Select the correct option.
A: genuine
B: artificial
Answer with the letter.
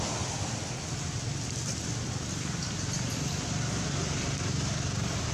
A